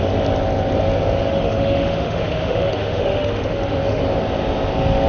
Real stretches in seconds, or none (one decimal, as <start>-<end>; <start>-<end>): 0.0-1.3; 4.0-5.1